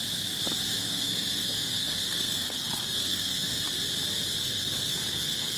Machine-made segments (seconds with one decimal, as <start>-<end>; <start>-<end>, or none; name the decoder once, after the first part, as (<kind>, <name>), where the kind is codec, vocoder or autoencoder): 0.8-3.6 (codec, SNAC); 4.4-5.6